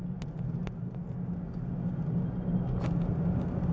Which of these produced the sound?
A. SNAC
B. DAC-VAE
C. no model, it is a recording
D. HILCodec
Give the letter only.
C